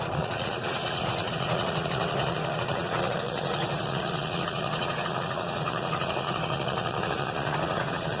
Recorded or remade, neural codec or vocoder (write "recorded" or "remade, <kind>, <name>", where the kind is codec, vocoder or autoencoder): remade, vocoder, Vocos